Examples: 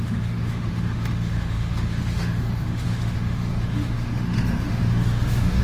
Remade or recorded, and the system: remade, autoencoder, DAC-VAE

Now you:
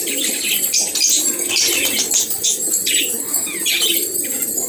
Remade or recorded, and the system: recorded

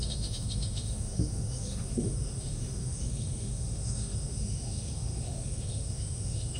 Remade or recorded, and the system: remade, autoencoder, DAC-VAE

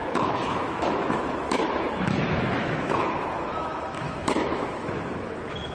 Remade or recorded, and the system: remade, autoencoder, DAC-VAE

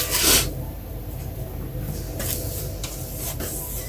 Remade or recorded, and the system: recorded